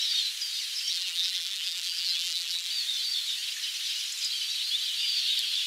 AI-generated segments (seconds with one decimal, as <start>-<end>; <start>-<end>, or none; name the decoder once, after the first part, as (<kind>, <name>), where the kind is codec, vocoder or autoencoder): 0.9-2.7 (vocoder, BigVGAN v2)